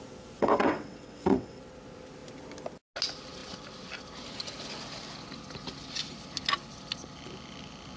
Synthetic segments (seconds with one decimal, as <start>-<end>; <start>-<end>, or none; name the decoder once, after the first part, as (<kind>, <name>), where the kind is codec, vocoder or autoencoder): 0.4-1.6 (vocoder, WaveNeXt)